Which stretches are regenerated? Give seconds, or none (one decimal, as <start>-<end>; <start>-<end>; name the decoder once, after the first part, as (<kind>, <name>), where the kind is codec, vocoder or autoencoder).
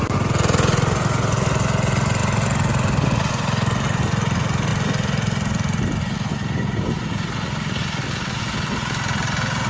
none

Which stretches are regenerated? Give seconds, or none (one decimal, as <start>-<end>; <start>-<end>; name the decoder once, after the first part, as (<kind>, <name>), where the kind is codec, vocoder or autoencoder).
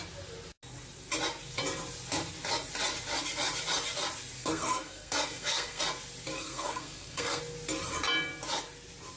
4.4-5.8 (codec, SNAC); 6.4-7.4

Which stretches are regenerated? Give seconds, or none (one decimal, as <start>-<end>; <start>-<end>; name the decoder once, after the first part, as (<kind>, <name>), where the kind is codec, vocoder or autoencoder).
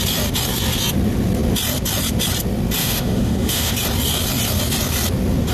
2.8-3.7 (autoencoder, DAC-VAE)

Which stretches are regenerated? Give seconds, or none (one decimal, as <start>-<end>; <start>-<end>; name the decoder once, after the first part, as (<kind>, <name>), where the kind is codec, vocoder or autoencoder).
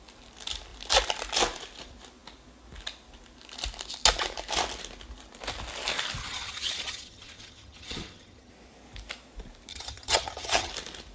6.2-8.5 (vocoder, HiFi-GAN); 9.7-10.7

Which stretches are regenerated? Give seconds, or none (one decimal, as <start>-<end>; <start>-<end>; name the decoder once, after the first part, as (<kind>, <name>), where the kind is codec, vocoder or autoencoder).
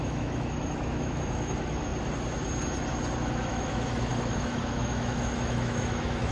0.0-1.9 (autoencoder, DAC-VAE); 3.3-6.3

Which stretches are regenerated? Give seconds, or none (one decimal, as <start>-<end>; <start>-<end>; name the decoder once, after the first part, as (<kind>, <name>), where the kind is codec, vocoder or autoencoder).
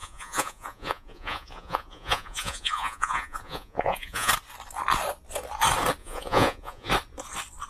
0.0-4.3 (vocoder, Vocos); 6.0-6.9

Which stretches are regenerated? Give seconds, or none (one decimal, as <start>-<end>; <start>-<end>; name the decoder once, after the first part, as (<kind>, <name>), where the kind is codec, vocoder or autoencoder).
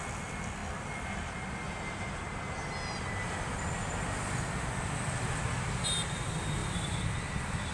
6.6-7.2 (vocoder, BigVGAN v2)